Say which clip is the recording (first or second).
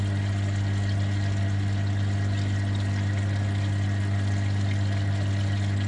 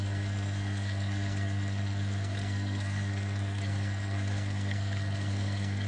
first